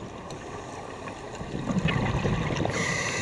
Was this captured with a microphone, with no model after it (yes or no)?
yes